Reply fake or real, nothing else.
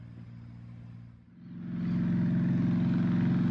real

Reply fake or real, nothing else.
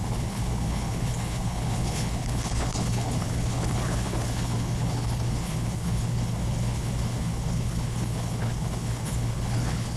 fake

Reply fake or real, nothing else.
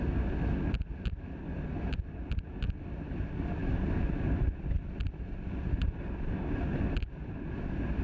real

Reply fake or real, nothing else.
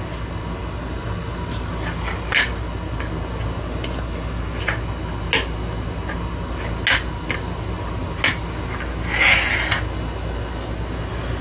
real